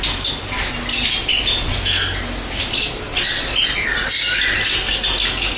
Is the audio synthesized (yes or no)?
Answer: no